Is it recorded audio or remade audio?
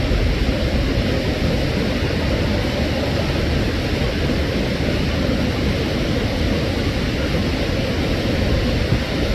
recorded